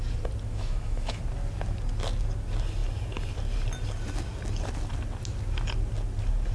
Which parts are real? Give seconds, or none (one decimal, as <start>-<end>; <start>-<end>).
0.0-0.5; 1.2-6.5